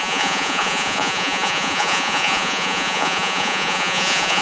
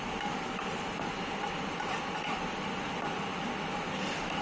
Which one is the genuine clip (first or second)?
second